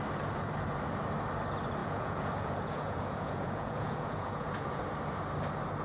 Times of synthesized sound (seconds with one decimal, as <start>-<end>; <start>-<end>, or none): 1.8-4.8